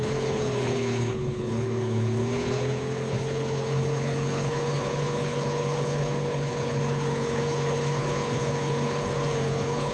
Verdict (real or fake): fake